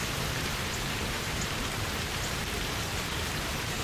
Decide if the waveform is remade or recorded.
remade